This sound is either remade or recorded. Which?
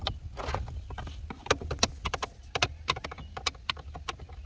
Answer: recorded